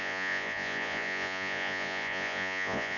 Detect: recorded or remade remade